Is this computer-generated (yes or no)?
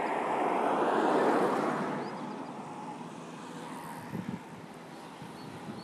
no